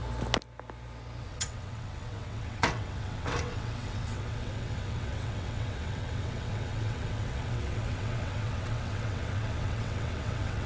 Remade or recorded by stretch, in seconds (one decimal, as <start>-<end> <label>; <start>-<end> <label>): 0.0-1.2 recorded; 1.2-10.7 remade